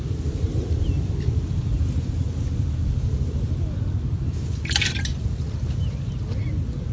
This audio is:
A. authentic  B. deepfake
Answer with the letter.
A